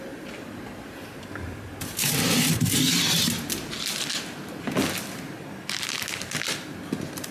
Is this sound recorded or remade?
recorded